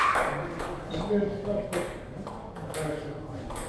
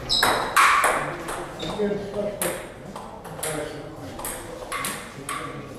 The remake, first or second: first